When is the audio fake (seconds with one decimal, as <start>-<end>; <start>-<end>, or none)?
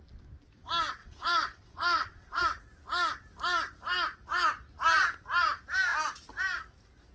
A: 1.0-2.4